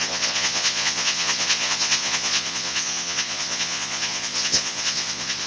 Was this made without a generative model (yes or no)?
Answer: no